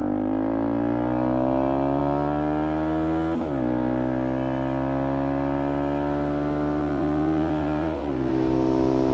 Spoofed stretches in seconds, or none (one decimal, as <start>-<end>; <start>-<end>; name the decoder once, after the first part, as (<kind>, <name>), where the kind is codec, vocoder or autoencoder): 6.8-8.3 (vocoder, Vocos)